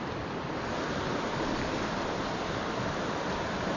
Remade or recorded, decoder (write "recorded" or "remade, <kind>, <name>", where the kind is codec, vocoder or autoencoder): recorded